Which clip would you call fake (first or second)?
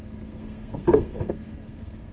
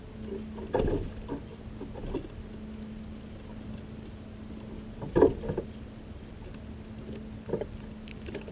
first